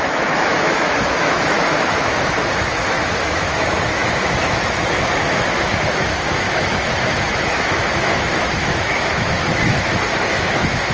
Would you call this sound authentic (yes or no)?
no